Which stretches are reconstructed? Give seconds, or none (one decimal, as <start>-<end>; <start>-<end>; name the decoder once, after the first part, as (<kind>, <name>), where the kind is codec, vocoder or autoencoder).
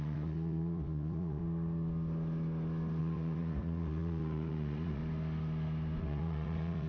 0.0-1.4 (vocoder, Vocos); 3.0-5.0; 6.0-6.9